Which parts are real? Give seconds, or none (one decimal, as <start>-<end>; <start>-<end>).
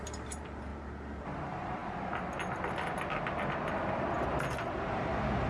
0.7-1.2; 1.8-4.7